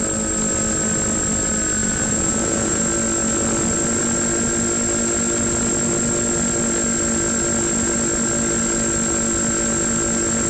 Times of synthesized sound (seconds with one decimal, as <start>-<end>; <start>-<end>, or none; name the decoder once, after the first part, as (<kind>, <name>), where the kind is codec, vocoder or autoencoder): 1.8-2.8 (vocoder, Vocos)